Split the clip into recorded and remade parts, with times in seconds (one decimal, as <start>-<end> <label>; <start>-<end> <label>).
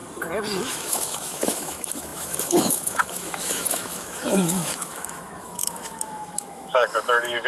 0.0-0.6 recorded; 0.6-7.5 remade